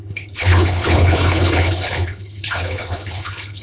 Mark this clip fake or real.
fake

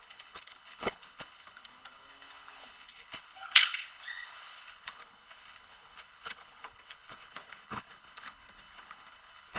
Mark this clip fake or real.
fake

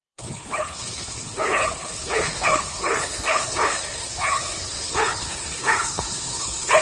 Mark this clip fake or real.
fake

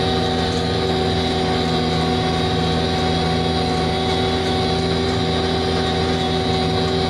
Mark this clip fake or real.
real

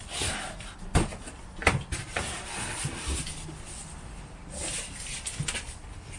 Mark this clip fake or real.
real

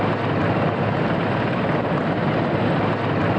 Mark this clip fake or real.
real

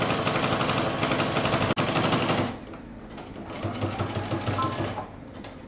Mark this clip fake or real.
real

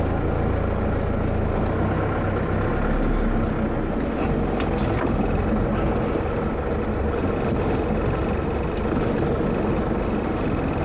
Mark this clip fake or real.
real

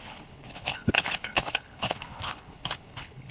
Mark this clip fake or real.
fake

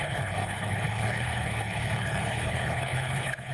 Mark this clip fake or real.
fake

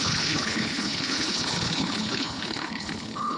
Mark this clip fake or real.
fake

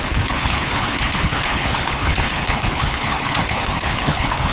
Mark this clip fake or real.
fake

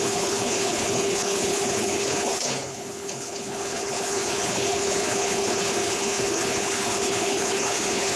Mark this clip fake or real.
fake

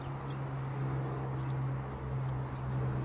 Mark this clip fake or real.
real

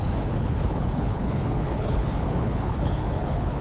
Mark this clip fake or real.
fake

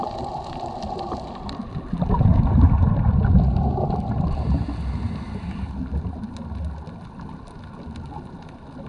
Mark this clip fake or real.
real